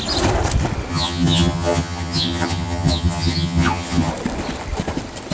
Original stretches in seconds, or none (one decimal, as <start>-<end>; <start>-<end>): 0.0-0.9; 4.1-5.3